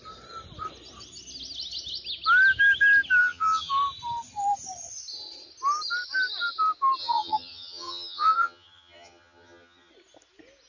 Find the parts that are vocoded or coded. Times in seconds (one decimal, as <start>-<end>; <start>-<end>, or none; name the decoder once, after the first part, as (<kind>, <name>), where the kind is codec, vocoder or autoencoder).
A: 3.2-3.7 (vocoder, HiFi-GAN); 7.0-9.9